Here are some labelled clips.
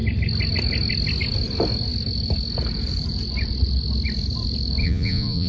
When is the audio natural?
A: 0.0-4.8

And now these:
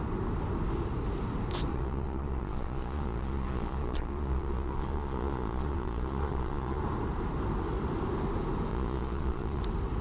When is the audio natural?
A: 0.0-1.7; 6.8-8.7; 9.6-10.0

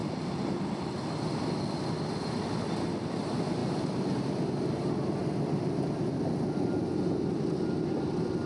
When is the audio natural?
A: 0.0-8.5